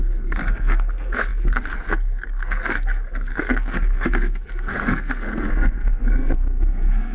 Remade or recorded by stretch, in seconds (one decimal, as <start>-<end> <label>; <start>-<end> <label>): 0.0-7.1 remade